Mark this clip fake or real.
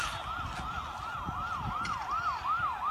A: real